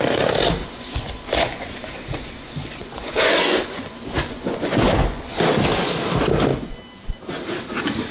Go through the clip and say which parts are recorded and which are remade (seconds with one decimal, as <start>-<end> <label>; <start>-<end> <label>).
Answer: 0.0-0.6 recorded; 0.6-5.4 remade; 5.4-8.1 recorded